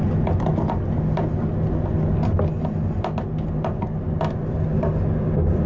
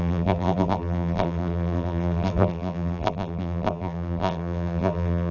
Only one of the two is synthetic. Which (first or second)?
second